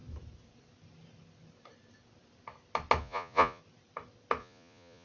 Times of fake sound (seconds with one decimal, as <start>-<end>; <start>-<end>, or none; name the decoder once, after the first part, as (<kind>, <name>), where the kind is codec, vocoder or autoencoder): 3.0-3.6 (vocoder, Vocos); 4.4-5.0